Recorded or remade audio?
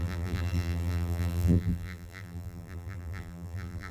remade